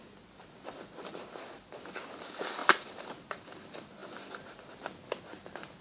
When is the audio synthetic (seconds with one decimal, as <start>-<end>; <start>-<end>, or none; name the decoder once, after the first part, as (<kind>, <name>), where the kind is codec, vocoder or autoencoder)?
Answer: none